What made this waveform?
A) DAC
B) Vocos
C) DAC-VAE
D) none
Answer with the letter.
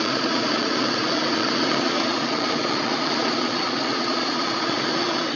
B